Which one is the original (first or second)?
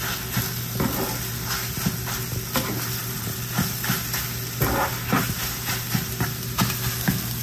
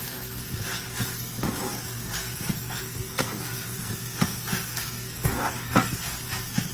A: first